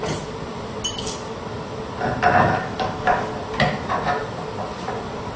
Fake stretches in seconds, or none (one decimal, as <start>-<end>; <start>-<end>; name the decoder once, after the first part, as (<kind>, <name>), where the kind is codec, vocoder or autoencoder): 2.6-3.3 (codec, DAC)